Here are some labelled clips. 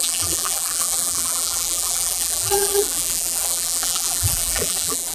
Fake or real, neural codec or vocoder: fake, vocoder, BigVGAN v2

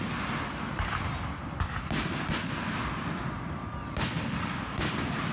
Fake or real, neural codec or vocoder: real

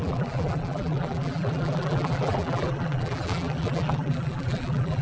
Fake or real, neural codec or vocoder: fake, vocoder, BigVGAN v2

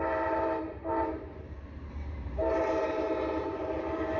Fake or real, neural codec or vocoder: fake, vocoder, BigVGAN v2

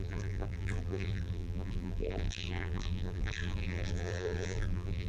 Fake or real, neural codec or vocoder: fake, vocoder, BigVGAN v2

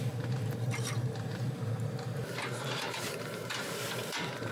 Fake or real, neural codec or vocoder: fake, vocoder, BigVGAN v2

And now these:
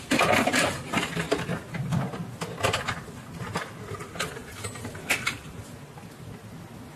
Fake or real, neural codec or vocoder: real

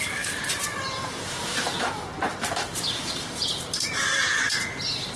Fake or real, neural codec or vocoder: fake, vocoder, BigVGAN v2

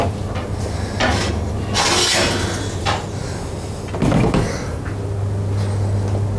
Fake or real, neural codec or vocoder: real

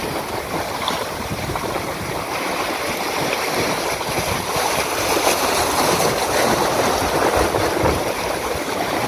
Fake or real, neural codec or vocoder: fake, vocoder, BigVGAN v2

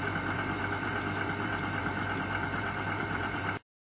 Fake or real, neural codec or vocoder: fake, vocoder, BigVGAN v2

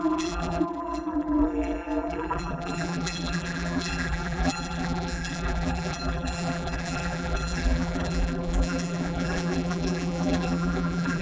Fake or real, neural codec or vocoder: fake, vocoder, BigVGAN v2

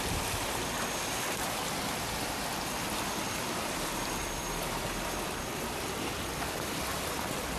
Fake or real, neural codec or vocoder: fake, vocoder, BigVGAN v2